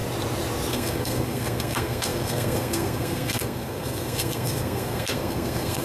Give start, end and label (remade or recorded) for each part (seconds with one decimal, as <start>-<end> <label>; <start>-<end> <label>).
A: 0.0-0.7 recorded; 0.7-5.8 remade